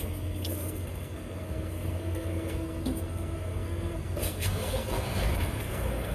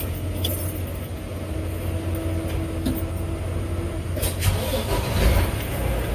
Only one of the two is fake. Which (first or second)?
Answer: first